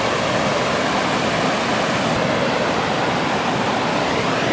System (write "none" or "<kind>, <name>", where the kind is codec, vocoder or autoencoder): none